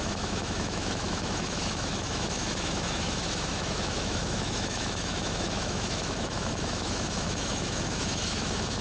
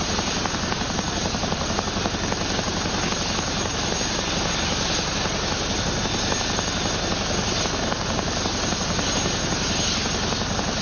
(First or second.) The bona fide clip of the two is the second